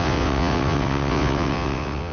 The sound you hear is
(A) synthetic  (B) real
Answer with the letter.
A